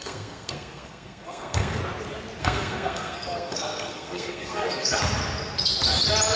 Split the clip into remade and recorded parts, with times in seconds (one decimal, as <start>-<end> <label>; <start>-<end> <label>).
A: 0.0-1.8 remade; 1.8-2.4 recorded; 2.4-5.0 remade; 5.0-6.4 recorded